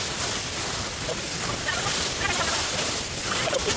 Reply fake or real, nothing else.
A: real